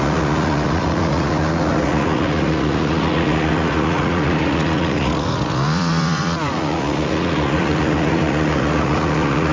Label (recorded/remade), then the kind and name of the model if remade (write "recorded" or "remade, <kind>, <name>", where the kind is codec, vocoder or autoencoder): remade, vocoder, Vocos